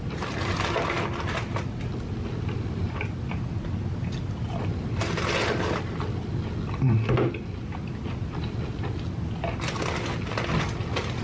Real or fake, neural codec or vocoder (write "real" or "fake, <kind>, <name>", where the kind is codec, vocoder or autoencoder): real